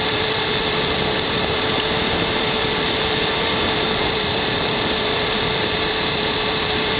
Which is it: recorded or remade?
remade